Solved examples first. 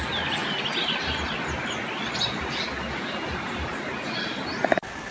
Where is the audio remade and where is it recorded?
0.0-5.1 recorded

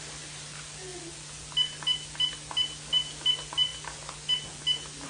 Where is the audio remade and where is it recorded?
0.0-5.1 recorded

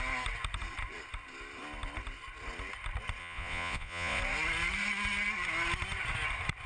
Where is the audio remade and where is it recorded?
0.0-3.2 recorded; 3.2-4.2 remade; 4.2-6.7 recorded

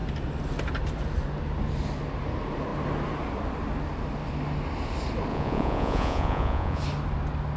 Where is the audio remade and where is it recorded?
0.0-5.3 recorded; 5.3-6.8 remade; 6.8-7.6 recorded

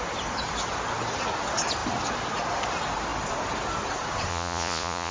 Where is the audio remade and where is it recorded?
0.0-4.3 recorded; 4.3-5.1 remade

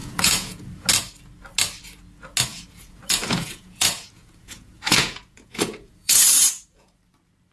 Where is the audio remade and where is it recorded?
0.0-0.9 remade; 0.9-2.5 recorded; 2.5-7.0 remade; 7.0-7.5 recorded